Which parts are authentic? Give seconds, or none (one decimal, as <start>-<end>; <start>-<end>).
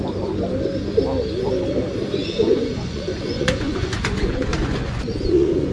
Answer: 0.0-2.2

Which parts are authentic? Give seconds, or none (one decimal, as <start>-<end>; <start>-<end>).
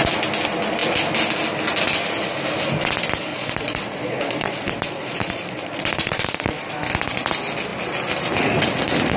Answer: 0.0-3.3; 6.7-9.2